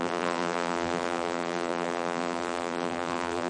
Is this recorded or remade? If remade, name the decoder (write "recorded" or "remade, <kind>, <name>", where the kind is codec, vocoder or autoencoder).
remade, vocoder, BigVGAN v2